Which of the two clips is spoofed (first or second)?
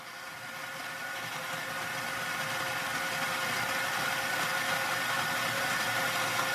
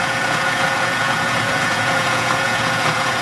second